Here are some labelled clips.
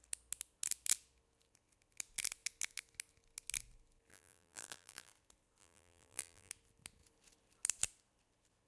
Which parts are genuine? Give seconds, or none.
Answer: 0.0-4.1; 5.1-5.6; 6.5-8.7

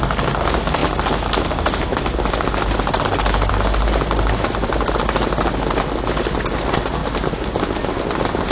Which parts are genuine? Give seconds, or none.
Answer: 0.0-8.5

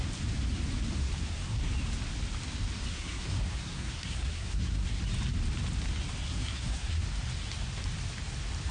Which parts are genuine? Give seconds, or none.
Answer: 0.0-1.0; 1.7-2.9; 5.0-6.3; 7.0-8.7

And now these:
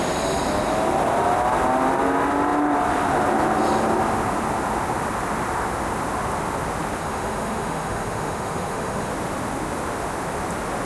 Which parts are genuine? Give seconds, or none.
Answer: 0.0-7.0; 9.1-10.8

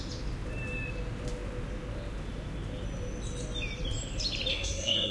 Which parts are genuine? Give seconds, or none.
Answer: 0.0-4.5

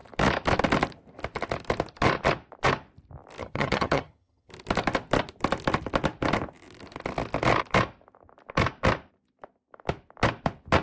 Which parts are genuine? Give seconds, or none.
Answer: 0.0-3.4; 4.5-10.8